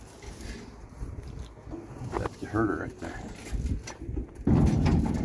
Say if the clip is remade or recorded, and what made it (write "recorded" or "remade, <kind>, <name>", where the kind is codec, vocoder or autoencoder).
recorded